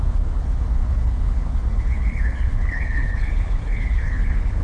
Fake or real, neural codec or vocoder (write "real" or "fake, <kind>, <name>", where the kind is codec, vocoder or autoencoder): fake, codec, HILCodec